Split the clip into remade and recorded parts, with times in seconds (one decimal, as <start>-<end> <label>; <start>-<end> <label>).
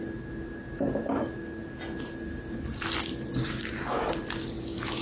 0.0-5.0 recorded